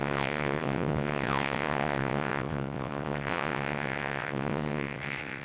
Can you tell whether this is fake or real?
fake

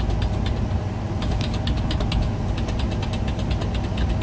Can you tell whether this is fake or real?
real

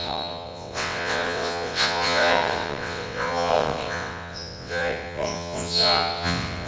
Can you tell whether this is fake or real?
fake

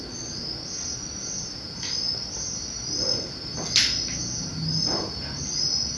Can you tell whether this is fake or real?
real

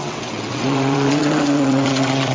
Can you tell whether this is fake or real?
fake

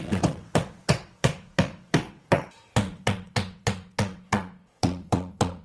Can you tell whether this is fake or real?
fake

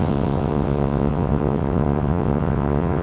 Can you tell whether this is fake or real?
fake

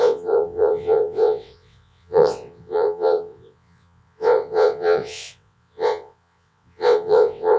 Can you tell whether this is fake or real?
fake